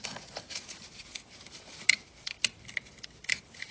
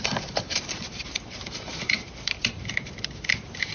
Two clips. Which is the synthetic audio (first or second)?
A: second